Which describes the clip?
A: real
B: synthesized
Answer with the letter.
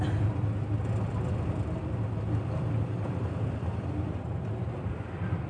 B